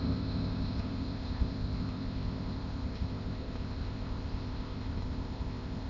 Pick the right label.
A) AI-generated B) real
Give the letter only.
A